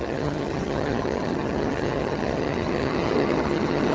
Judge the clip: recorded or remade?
remade